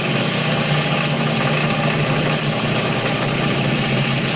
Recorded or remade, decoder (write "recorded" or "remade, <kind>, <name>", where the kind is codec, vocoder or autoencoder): recorded